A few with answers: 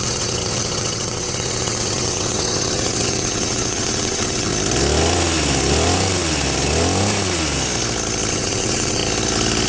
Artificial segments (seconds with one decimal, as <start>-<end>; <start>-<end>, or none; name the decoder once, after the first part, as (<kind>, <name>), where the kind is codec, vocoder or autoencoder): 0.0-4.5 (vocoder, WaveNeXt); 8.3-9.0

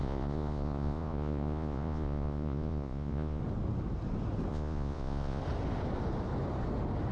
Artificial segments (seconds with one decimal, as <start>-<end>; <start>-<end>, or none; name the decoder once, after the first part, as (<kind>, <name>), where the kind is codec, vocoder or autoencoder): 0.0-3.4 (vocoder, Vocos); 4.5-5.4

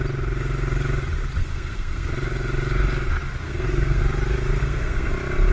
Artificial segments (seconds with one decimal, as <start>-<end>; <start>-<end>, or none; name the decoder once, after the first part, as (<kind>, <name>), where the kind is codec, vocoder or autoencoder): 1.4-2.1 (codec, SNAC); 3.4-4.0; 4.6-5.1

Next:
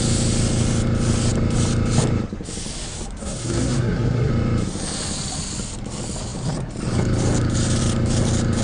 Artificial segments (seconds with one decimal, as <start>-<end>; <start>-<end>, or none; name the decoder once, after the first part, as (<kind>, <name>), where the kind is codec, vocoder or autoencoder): 3.2-4.3 (codec, SNAC)

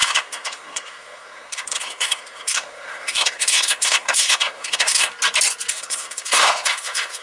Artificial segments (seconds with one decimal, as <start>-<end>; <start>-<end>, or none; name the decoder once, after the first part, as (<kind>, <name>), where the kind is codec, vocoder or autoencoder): 0.0-5.1 (codec, SNAC); 5.7-7.2

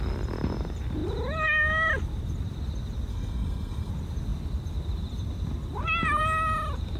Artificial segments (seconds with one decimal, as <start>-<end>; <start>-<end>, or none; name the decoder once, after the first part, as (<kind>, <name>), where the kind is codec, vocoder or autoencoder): 3.1-3.9 (codec, SNAC)